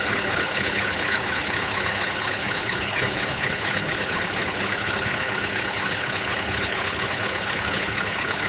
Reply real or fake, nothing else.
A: fake